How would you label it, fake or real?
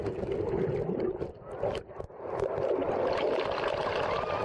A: real